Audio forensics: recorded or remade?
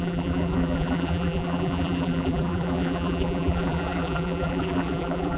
remade